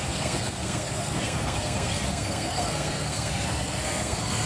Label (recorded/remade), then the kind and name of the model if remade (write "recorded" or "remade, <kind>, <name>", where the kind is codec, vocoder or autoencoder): remade, codec, SNAC